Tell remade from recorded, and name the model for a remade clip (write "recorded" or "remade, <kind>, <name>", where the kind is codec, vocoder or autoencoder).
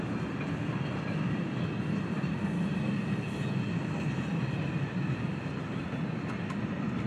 recorded